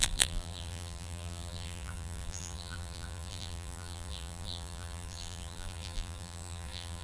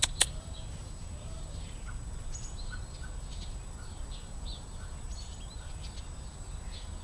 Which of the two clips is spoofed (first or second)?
first